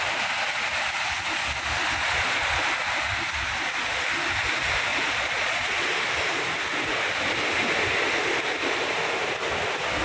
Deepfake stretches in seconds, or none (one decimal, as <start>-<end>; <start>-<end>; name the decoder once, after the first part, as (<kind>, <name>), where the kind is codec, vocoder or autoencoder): 2.0-2.6 (vocoder, Vocos); 4.9-5.9